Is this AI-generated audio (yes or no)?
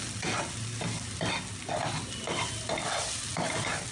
no